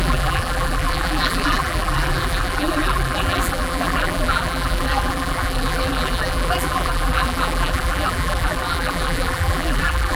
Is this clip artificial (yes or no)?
yes